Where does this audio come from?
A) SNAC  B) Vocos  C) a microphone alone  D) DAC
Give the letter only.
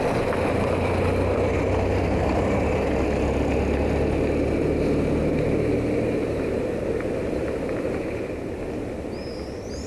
C